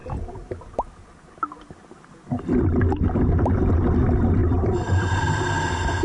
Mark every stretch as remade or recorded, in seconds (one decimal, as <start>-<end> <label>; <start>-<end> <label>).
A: 0.0-0.5 remade; 0.5-4.4 recorded; 4.4-5.2 remade; 5.2-6.0 recorded